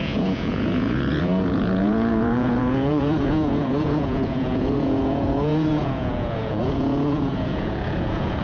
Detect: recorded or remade remade